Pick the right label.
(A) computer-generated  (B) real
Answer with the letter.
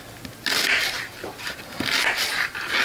B